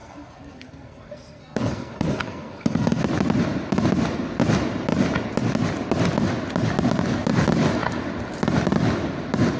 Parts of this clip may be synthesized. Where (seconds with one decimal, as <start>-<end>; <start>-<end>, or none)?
0.0-3.0